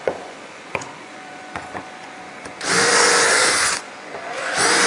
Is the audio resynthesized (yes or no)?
yes